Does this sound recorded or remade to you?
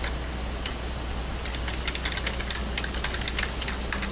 recorded